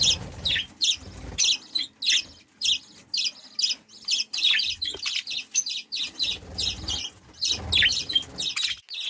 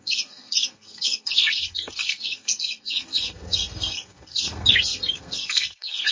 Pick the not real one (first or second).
second